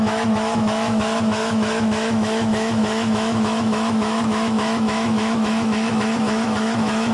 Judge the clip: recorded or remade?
remade